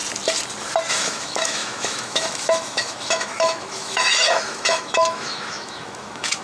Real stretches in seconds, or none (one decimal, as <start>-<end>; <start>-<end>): 0.0-0.9